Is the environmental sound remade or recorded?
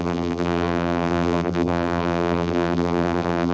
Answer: remade